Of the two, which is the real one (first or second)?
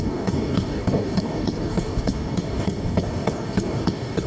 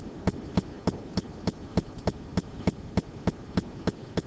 second